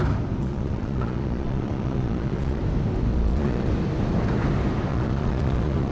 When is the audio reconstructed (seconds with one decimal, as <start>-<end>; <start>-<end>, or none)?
0.4-2.6; 3.1-3.7; 4.9-5.9